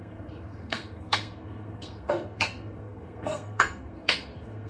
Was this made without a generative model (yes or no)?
no